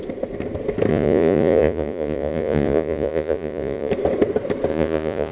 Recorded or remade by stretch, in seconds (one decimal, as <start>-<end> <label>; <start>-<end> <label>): 0.0-0.9 recorded; 0.9-3.9 remade; 3.9-4.7 recorded; 4.7-5.3 remade